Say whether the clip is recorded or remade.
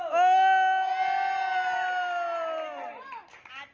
recorded